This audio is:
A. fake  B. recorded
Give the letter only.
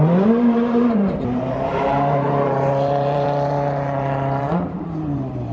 A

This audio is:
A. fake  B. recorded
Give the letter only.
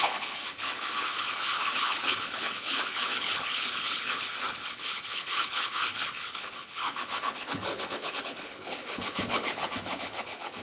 A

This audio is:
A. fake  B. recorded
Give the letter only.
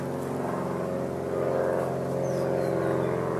B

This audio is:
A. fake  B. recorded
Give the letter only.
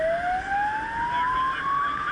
B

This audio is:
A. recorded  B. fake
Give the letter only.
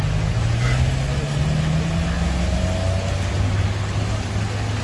A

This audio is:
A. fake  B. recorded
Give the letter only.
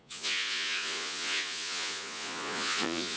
A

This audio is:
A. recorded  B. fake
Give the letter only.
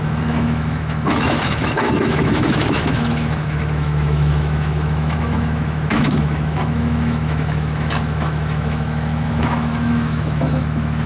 B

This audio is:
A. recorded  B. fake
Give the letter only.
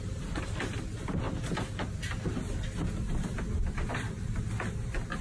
A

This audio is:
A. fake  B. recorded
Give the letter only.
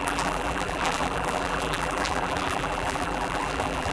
A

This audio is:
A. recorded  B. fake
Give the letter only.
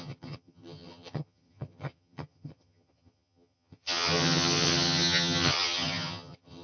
B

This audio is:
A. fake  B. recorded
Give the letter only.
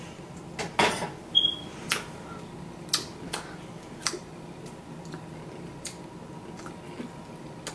B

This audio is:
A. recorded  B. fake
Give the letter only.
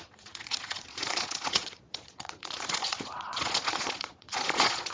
B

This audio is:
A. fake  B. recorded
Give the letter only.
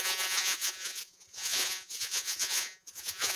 A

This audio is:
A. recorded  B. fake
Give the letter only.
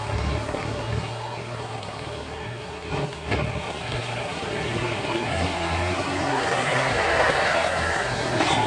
B